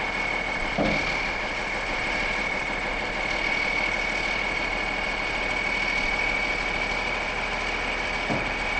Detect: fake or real real